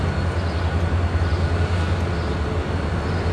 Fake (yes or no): no